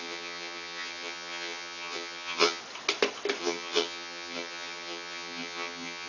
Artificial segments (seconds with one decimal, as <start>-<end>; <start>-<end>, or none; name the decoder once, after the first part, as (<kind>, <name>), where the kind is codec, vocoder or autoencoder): 0.0-2.6 (vocoder, HiFi-GAN); 3.4-6.1